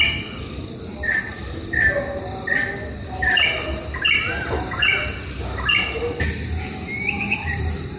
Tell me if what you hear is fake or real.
real